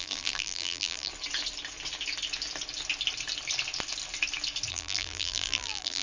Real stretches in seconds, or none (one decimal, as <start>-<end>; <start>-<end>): 1.1-4.7